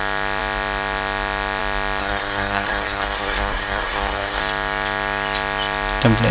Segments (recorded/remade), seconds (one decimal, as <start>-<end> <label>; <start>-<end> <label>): 0.0-2.0 recorded; 2.0-4.4 remade; 4.4-6.3 recorded